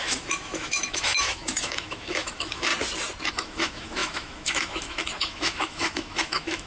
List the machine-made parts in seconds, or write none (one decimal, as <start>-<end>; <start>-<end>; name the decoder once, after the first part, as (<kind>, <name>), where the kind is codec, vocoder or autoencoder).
0.0-2.7 (autoencoder, DAC-VAE); 3.3-6.7